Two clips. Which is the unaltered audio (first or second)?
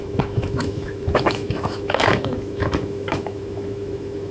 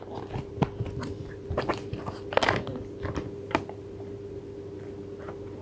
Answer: second